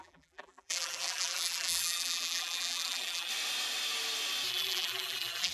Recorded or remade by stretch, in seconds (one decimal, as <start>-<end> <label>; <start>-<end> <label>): 0.0-3.3 remade; 3.3-4.5 recorded; 4.5-5.5 remade